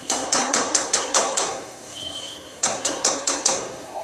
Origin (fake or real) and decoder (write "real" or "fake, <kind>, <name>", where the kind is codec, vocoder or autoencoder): fake, codec, SNAC